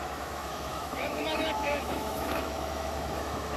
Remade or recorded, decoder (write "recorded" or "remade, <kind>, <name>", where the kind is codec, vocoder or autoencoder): remade, autoencoder, DAC-VAE